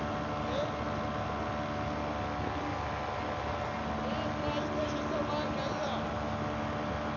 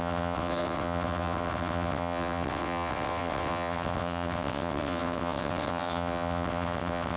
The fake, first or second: second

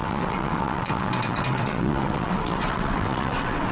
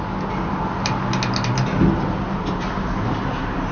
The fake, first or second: first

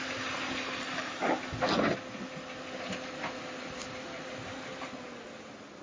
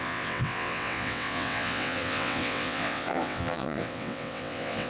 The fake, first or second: second